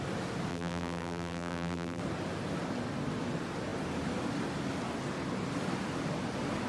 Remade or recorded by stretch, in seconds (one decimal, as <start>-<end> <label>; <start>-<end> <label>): 0.0-0.5 recorded; 0.5-2.0 remade; 2.0-6.7 recorded